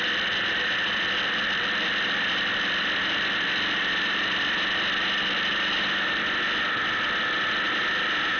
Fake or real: real